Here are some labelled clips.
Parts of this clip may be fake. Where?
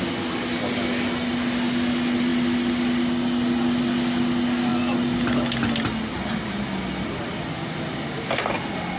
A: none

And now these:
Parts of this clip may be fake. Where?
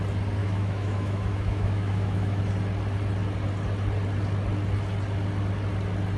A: 0.4-2.4